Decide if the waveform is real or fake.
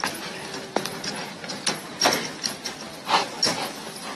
real